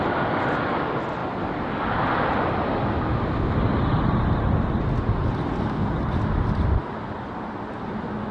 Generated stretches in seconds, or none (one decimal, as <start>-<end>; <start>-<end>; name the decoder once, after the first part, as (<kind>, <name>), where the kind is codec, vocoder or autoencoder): none